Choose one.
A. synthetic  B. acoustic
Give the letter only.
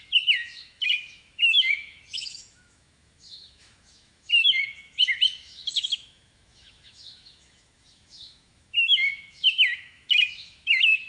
A